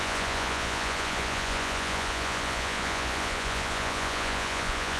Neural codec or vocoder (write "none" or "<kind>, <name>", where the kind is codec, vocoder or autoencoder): vocoder, Vocos